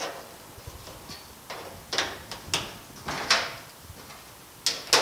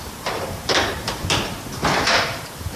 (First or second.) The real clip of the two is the first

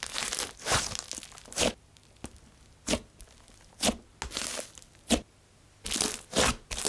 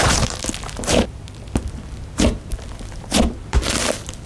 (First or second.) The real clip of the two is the first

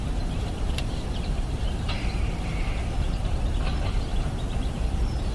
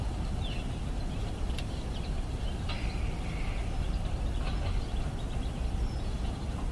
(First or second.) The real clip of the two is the second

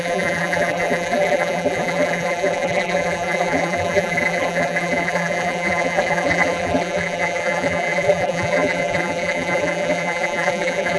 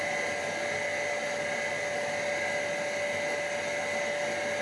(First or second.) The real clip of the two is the second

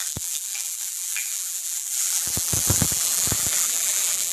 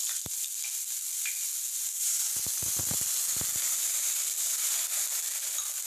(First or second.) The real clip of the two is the second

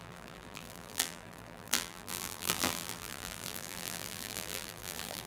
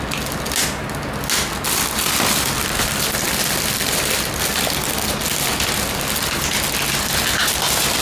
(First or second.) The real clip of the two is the second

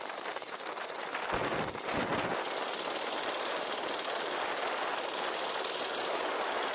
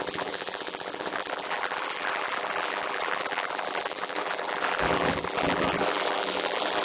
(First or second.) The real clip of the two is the first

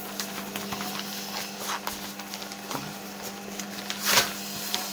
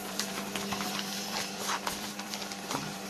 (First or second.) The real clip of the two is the first